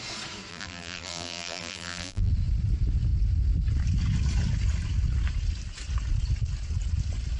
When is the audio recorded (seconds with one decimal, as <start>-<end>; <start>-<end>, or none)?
0.0-0.5; 2.3-7.4

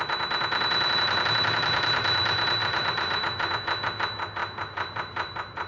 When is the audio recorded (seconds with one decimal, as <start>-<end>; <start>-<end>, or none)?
0.0-2.6; 3.5-4.4

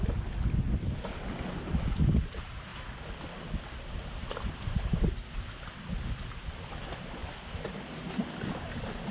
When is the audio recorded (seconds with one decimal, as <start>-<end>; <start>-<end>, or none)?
0.0-7.2

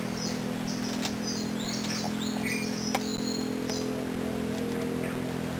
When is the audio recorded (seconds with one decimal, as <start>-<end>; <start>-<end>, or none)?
0.0-5.6